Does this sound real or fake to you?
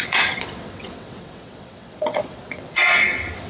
fake